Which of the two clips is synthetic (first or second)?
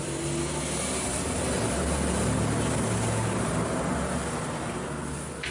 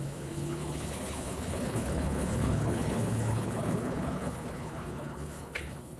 second